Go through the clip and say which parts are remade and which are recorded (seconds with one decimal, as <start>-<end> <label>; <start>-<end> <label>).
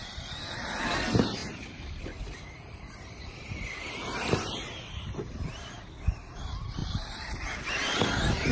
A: 0.0-1.4 recorded; 1.4-3.8 remade; 3.8-6.8 recorded; 6.8-7.6 remade; 7.6-8.5 recorded